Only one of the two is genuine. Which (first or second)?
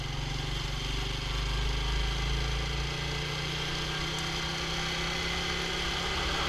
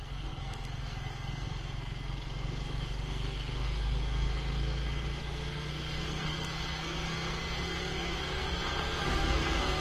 first